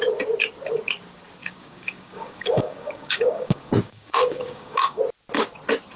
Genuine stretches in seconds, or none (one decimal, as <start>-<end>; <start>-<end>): 0.0-1.4; 5.0-6.0